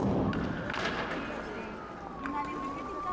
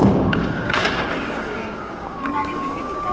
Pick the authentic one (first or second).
first